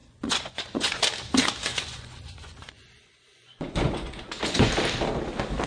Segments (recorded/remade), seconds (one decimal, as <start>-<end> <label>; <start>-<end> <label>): 0.0-1.0 remade; 1.0-1.7 recorded; 1.7-4.7 remade; 4.7-5.7 recorded